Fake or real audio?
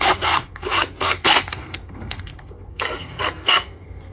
fake